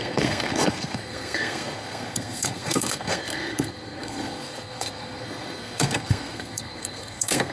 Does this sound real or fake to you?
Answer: fake